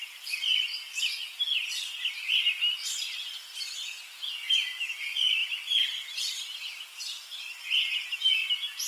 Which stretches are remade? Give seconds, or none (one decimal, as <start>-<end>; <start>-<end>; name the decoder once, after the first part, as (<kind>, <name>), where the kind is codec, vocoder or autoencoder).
none